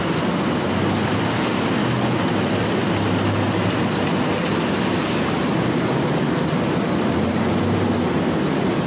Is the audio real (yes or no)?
yes